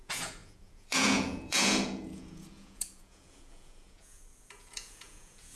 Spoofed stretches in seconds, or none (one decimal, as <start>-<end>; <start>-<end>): 0.0-5.6